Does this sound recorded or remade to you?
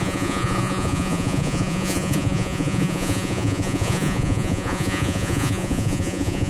remade